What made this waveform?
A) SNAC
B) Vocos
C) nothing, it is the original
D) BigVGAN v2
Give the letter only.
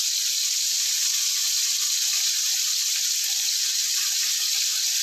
C